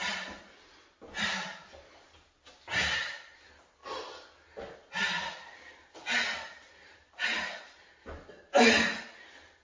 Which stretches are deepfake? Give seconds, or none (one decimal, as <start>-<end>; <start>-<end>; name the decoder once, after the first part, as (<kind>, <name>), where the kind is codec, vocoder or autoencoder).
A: none

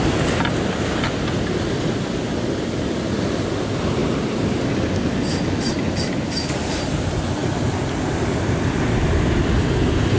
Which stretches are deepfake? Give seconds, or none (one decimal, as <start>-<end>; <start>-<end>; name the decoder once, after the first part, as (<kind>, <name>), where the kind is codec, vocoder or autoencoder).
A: none

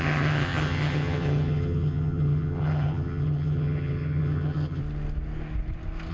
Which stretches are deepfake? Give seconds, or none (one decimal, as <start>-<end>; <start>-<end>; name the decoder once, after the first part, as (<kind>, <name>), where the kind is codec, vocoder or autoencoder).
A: 0.0-4.8 (vocoder, HiFi-GAN)

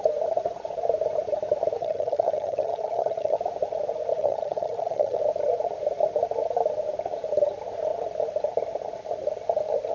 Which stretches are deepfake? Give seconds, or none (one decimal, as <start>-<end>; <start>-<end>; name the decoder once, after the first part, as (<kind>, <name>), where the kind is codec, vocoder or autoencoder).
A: 1.8-3.4 (vocoder, HiFi-GAN); 4.1-5.2

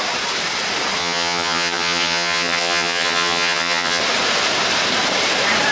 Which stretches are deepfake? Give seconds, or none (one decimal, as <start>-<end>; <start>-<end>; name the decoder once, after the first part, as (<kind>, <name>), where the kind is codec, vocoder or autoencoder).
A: 1.0-4.0 (vocoder, HiFi-GAN)

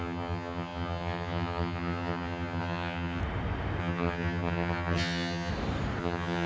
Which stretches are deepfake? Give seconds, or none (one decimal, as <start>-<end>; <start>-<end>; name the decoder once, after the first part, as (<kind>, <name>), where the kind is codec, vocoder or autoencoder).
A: 0.0-3.2 (vocoder, HiFi-GAN); 3.8-5.5; 6.0-6.5

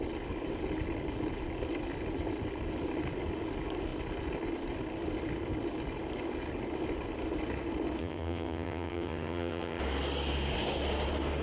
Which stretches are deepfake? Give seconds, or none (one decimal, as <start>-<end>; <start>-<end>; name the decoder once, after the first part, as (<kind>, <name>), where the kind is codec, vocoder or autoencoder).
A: 8.0-9.8 (vocoder, HiFi-GAN)